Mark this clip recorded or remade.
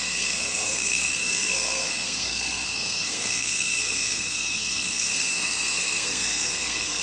remade